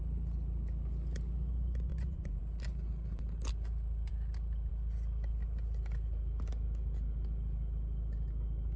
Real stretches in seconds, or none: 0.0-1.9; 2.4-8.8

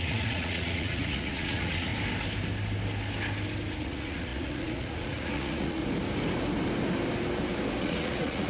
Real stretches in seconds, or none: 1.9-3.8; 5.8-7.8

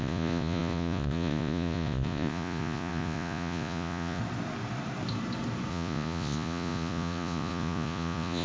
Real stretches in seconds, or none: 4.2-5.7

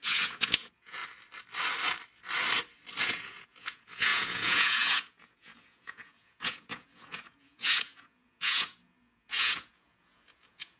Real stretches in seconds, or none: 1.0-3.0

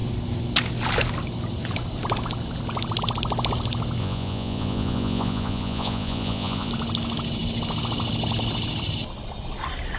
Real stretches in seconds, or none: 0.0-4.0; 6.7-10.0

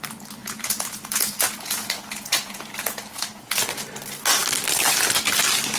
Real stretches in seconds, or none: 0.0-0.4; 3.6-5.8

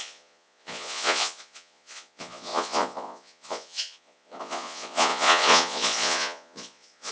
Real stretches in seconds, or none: none

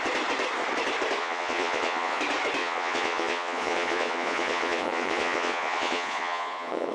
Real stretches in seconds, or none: 0.0-1.2; 2.2-2.6